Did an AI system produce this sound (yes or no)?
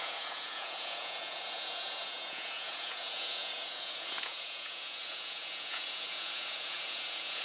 yes